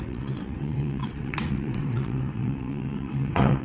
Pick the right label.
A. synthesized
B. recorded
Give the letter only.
A